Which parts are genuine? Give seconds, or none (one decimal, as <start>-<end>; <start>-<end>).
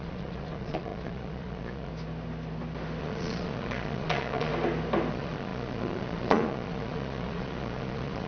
1.9-3.0; 4.5-5.1